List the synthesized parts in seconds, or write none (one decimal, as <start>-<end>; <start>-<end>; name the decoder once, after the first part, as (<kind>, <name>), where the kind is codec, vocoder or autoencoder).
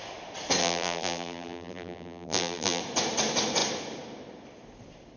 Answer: 0.6-2.8 (vocoder, BigVGAN v2)